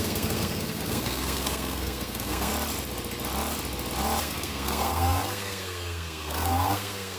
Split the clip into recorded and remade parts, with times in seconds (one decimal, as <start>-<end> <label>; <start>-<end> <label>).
0.0-2.5 remade; 2.5-4.2 recorded; 4.2-7.2 remade